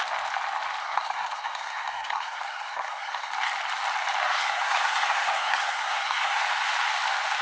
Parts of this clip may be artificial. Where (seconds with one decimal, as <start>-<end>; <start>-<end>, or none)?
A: 0.8-3.3; 4.2-6.4